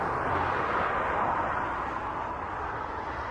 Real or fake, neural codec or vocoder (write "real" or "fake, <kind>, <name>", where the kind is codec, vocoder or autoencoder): real